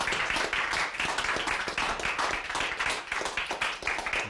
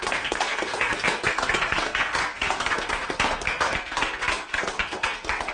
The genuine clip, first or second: first